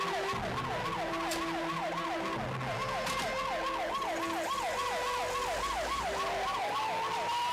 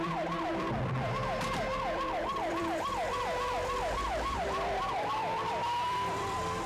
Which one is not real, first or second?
second